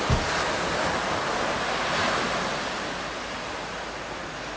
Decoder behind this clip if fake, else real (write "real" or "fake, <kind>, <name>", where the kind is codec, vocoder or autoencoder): real